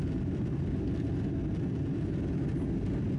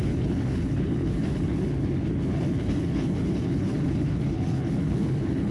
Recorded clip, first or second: first